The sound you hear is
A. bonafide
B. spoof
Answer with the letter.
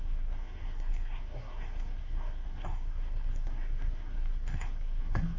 B